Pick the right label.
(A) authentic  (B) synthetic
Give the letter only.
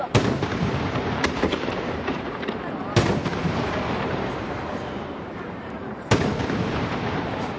B